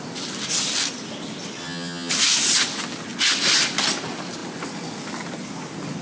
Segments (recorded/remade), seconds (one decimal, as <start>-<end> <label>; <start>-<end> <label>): 0.0-1.6 recorded; 1.6-2.1 remade; 2.1-6.0 recorded